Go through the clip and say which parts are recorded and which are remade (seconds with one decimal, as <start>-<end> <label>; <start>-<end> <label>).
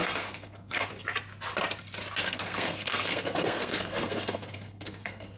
0.0-0.9 remade; 0.9-2.2 recorded; 2.2-5.4 remade